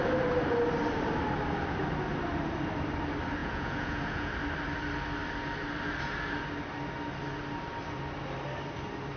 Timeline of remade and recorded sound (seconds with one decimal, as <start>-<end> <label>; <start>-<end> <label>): 0.0-3.4 recorded; 3.4-4.3 remade; 4.3-9.2 recorded